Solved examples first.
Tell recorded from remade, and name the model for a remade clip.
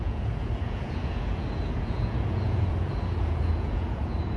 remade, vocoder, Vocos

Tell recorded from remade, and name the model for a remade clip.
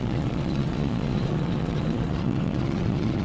remade, vocoder, Vocos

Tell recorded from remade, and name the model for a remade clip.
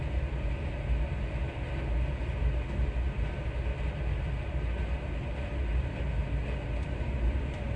recorded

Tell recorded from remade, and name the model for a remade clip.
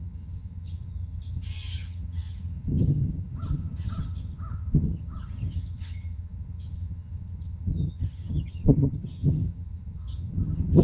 remade, vocoder, HiFi-GAN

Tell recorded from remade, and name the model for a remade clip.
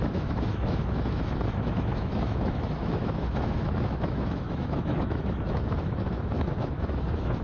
remade, autoencoder, DAC-VAE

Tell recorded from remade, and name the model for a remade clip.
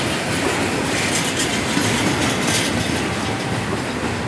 recorded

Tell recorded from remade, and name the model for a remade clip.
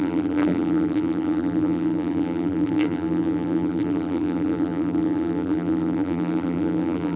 remade, vocoder, BigVGAN v2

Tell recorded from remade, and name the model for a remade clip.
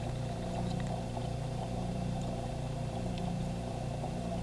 remade, vocoder, BigVGAN v2